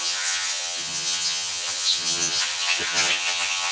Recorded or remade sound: remade